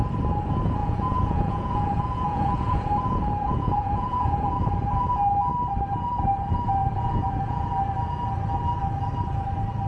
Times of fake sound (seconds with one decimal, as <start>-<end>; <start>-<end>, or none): 0.8-4.6; 6.8-7.7